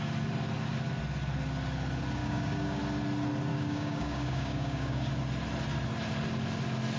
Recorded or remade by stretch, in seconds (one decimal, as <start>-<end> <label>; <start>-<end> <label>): 0.0-2.2 recorded; 2.2-2.8 remade; 2.8-3.5 recorded; 3.5-5.1 remade; 5.1-7.0 recorded